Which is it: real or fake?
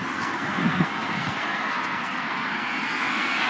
fake